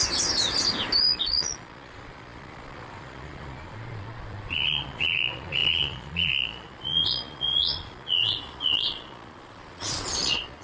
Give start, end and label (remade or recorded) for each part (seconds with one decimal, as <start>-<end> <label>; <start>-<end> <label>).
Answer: 0.0-1.0 recorded; 1.0-10.6 remade